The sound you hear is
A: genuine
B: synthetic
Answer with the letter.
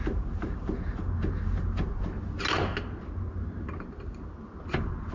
A